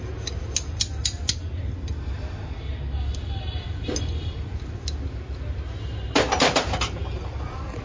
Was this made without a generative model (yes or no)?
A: yes